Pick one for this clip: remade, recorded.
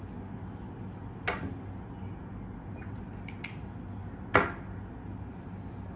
recorded